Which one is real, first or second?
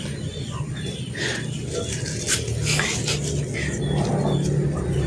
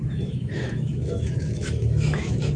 first